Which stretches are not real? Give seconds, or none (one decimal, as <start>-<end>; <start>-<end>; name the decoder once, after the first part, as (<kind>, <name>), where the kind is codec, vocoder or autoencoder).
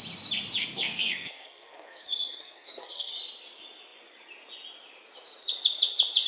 0.6-3.1 (codec, SNAC)